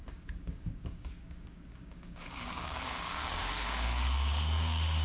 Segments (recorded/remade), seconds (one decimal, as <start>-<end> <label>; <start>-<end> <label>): 0.0-5.0 remade